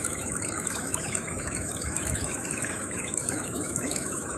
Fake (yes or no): yes